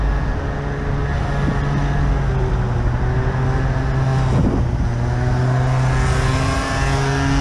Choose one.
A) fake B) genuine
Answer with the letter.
B